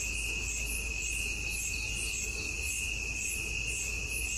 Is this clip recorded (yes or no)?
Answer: yes